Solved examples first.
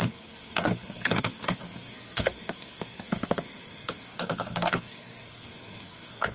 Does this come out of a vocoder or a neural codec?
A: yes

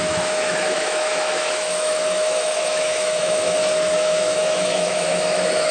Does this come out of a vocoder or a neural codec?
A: yes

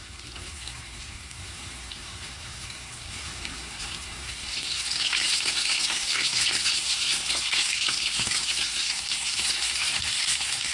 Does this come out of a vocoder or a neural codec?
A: yes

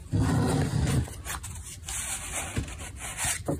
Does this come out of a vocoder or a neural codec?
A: no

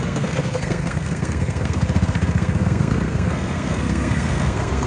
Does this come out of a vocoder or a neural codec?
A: yes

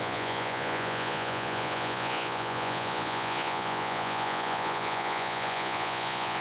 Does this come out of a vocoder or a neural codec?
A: yes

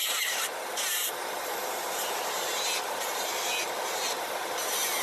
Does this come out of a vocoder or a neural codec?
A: yes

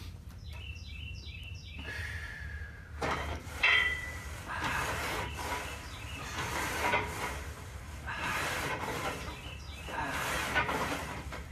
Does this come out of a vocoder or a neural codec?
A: yes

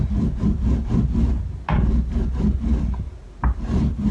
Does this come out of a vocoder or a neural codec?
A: no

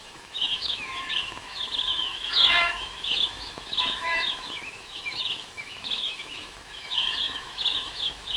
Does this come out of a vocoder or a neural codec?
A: yes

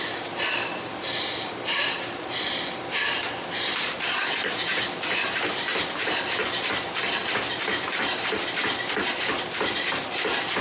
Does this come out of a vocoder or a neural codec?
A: yes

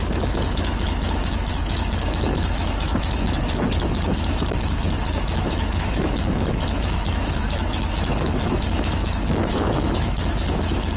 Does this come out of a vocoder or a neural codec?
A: yes